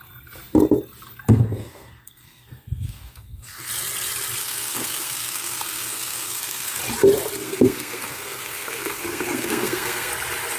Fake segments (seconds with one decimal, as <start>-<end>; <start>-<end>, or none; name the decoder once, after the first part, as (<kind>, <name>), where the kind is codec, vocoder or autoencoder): 1.3-3.7 (codec, SNAC); 4.4-6.8; 7.4-10.1